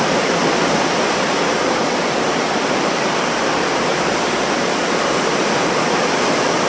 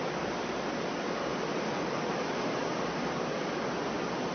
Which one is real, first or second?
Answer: second